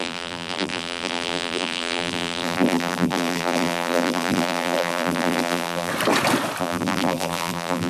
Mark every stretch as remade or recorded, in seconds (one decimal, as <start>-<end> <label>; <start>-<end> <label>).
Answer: 0.0-5.9 remade; 5.9-6.6 recorded; 6.6-7.9 remade